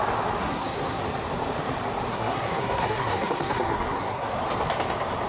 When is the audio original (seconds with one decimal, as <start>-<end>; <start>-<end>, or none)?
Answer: 0.0-0.4; 1.0-2.1; 4.4-5.3